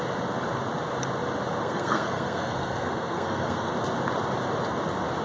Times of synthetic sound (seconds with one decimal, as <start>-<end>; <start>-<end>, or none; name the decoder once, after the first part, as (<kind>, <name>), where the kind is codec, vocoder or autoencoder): 1.6-3.7 (codec, SNAC)